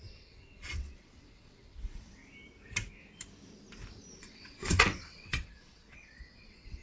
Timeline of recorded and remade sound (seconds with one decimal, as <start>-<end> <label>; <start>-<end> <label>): 0.0-2.2 remade; 2.2-4.2 recorded; 4.2-6.8 remade